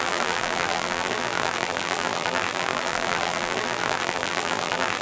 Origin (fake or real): fake